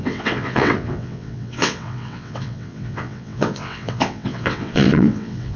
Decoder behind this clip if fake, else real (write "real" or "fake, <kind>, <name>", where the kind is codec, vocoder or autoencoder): fake, vocoder, WaveNeXt